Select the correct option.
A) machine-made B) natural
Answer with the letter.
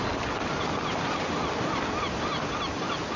B